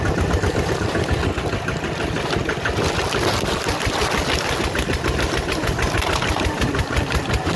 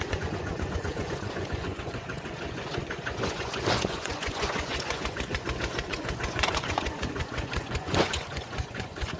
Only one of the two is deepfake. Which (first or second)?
second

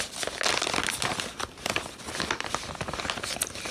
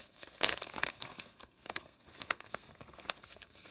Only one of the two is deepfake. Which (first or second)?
second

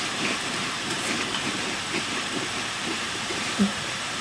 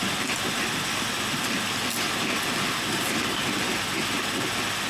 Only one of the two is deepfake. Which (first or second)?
first